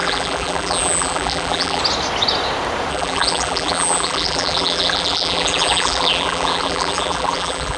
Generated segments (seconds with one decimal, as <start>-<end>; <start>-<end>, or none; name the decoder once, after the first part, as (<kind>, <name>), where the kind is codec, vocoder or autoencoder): 0.0-1.8 (vocoder, BigVGAN v2); 2.9-7.8